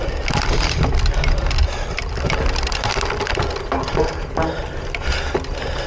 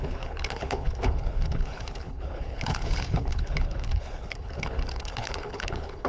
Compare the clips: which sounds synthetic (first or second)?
second